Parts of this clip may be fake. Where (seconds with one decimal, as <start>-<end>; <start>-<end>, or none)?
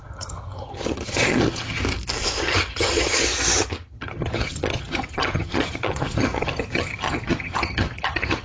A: 0.0-1.8; 2.4-8.4